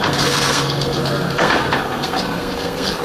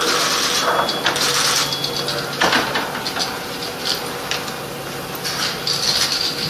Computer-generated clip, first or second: first